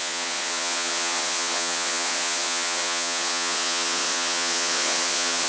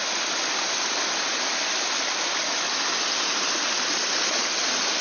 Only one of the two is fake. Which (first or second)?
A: first